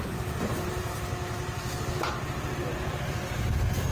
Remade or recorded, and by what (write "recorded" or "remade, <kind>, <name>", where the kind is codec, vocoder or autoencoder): recorded